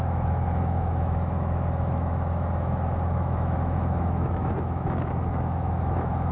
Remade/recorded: remade